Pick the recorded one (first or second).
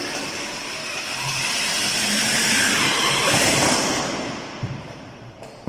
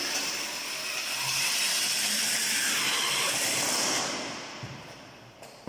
second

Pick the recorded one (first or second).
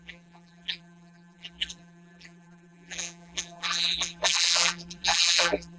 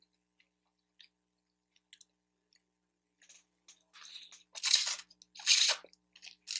second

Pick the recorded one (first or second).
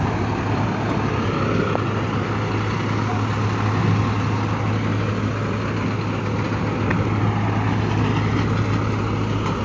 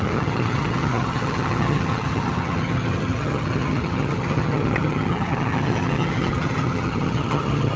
first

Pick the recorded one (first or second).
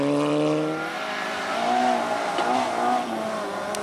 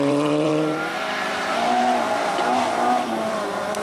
first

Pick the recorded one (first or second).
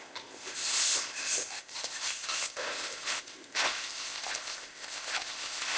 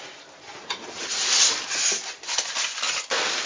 second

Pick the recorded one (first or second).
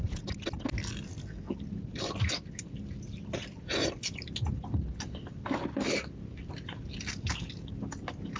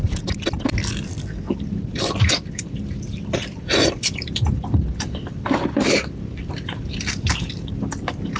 first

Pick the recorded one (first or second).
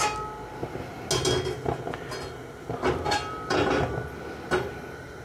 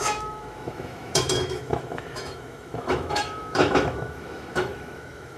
first